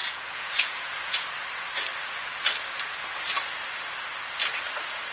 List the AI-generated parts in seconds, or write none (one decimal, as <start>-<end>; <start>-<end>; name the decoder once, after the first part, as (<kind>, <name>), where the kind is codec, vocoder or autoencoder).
0.0-1.1 (vocoder, Vocos)

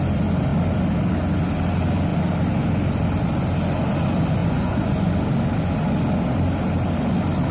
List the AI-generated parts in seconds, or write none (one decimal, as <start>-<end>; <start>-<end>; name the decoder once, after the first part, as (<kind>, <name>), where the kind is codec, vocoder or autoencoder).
4.4-5.1 (vocoder, Vocos)

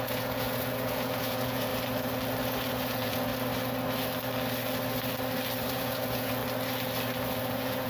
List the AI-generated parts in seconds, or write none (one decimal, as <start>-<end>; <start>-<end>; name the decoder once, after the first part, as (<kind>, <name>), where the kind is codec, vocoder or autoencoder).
0.0-1.7 (vocoder, Vocos); 2.7-3.3; 5.7-6.4; 7.4-7.9

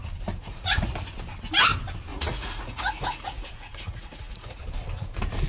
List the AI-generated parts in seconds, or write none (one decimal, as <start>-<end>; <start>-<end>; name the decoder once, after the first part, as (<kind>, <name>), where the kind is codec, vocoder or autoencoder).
0.4-0.9 (vocoder, Vocos); 2.1-4.6

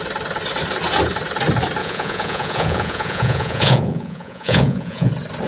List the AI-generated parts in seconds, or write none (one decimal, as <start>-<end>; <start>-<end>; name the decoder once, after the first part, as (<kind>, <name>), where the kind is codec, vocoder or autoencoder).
1.8-5.1 (vocoder, Vocos)

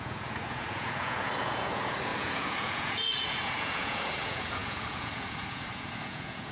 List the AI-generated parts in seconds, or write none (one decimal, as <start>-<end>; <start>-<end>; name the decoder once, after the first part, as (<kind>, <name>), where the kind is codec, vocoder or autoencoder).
0.0-6.5 (vocoder, Vocos)

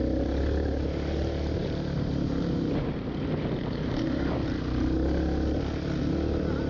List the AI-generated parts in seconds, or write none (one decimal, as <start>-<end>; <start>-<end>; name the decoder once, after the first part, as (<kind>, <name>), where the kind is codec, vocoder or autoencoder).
none

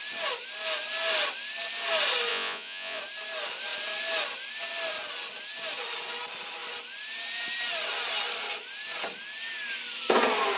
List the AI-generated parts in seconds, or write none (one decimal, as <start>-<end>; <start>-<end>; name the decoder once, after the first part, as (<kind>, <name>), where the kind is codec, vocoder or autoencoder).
2.3-3.0 (vocoder, Vocos)